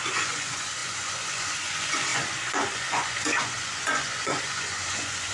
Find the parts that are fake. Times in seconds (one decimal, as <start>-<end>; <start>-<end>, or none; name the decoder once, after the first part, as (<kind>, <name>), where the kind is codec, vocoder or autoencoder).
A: 0.0-5.3 (vocoder, Vocos)